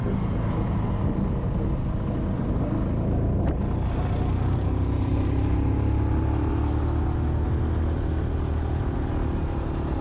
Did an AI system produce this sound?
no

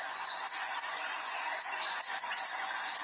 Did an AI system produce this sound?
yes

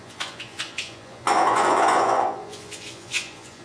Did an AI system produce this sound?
yes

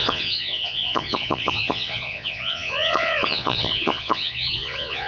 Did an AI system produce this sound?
yes